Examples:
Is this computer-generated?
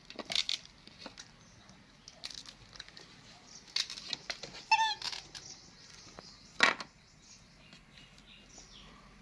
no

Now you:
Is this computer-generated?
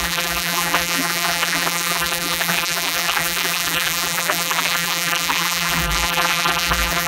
yes